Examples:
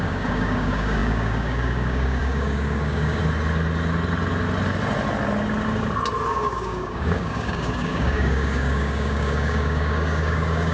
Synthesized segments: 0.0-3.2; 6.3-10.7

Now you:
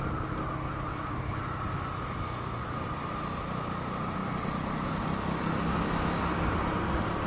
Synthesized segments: none